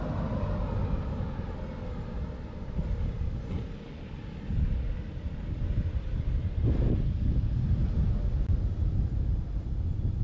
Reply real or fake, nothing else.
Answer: real